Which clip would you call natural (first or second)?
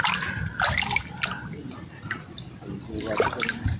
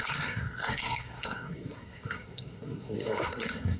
first